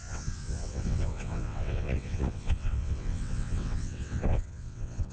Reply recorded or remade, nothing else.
remade